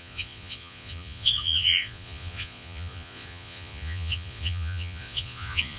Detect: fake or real fake